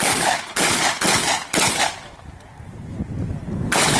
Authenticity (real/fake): real